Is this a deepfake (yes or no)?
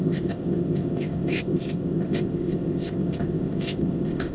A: yes